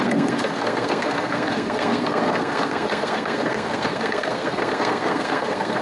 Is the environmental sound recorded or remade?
remade